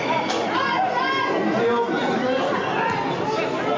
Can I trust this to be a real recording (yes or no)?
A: yes